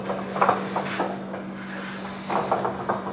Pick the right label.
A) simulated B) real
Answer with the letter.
B